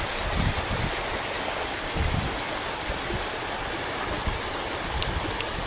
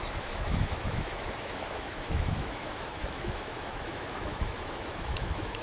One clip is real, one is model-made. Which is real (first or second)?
first